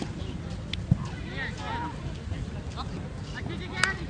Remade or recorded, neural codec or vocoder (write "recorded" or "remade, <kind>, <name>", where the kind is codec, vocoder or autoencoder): recorded